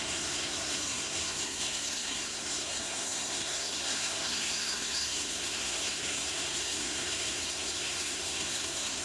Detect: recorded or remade remade